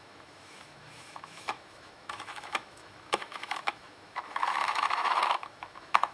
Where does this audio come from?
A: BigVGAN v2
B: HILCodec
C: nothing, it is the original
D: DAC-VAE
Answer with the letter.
D